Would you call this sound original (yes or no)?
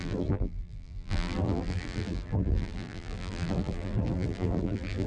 no